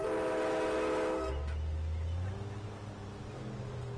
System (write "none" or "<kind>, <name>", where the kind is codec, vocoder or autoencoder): none